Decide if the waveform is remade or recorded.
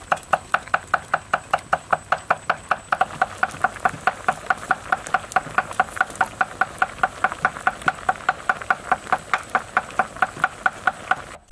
recorded